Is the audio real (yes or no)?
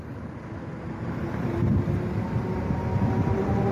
yes